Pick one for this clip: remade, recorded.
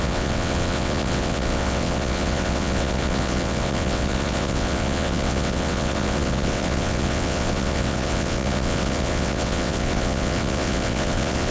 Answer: remade